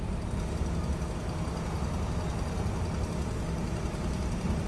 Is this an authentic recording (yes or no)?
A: yes